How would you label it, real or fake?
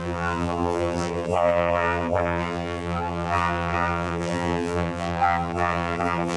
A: fake